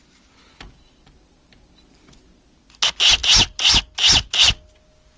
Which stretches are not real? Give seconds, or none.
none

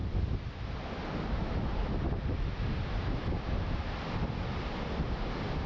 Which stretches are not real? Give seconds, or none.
none

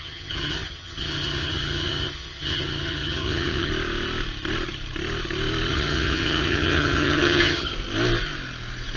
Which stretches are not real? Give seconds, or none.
0.0-3.7 (vocoder, HiFi-GAN); 5.7-7.7

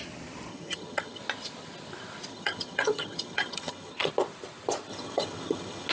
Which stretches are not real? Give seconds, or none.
0.5-1.2 (vocoder, HiFi-GAN); 2.3-4.1; 4.9-5.9

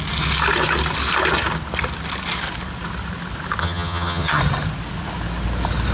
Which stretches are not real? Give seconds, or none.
3.6-4.4 (vocoder, HiFi-GAN)

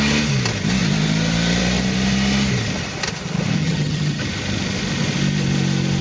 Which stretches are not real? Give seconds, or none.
3.6-4.2 (vocoder, HiFi-GAN)

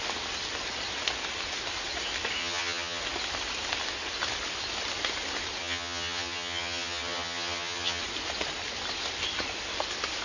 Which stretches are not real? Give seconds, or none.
2.4-3.0 (vocoder, HiFi-GAN); 5.6-8.0

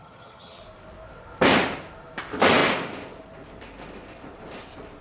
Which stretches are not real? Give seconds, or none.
0.0-0.6 (vocoder, HiFi-GAN)